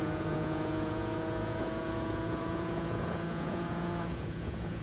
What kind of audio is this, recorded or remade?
remade